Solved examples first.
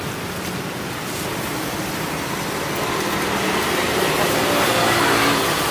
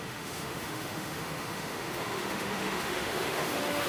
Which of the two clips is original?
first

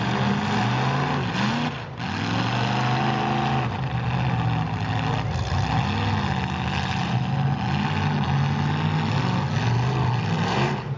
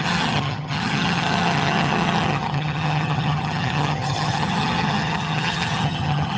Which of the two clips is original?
first